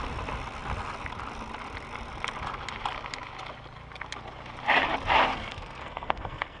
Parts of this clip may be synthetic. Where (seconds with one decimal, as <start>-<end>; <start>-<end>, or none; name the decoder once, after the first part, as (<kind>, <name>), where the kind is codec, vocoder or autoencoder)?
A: 5.3-6.6 (codec, SNAC)